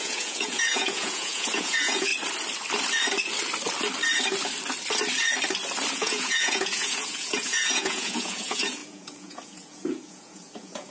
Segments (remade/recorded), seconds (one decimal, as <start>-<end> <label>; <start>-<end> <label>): 0.0-2.1 remade; 2.1-5.9 recorded; 5.9-10.9 remade